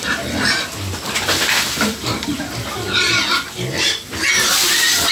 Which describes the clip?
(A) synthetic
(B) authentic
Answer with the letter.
B